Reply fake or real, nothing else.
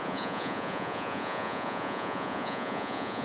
fake